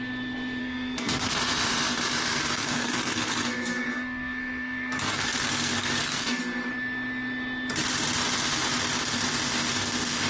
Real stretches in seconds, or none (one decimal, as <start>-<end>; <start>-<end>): 0.0-0.6; 1.3-2.3; 6.4-10.3